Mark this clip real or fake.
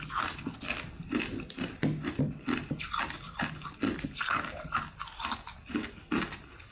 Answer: real